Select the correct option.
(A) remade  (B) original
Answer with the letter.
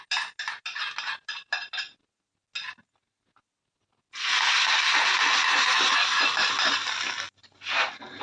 B